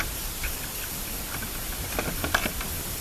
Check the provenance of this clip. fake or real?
real